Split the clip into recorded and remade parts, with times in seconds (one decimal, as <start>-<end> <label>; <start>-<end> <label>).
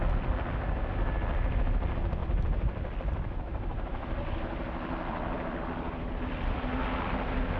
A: 0.0-2.2 recorded; 2.2-6.8 remade; 6.8-7.6 recorded